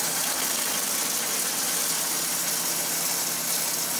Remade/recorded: recorded